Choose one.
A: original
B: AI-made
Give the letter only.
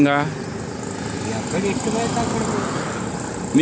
A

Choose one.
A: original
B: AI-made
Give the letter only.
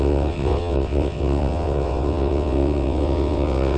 B